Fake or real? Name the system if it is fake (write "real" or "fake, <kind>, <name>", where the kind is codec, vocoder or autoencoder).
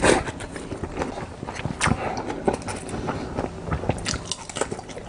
real